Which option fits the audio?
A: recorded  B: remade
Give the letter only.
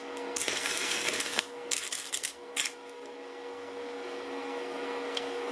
B